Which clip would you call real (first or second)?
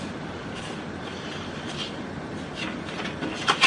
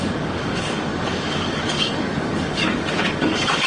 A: first